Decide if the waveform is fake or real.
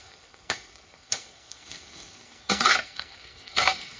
fake